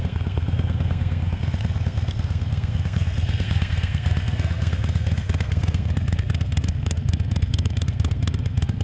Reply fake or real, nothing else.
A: fake